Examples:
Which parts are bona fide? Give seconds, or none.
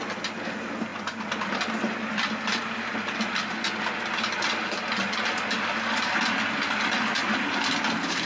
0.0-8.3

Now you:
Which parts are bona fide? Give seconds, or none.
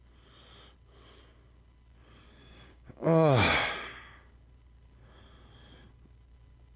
0.0-2.4; 3.7-6.8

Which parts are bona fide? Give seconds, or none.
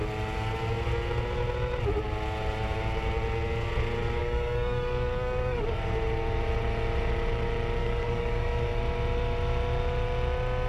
0.0-4.2; 5.8-7.8; 8.8-10.7